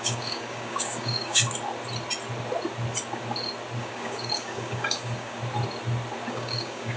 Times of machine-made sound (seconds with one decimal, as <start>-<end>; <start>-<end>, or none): 0.0-1.4; 3.8-5.4; 6.3-7.0